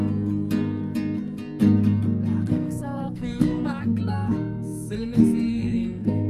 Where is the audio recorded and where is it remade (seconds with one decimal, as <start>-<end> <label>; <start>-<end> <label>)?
0.0-2.5 recorded; 2.5-6.3 remade